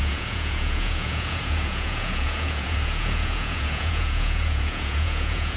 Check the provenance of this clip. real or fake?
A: fake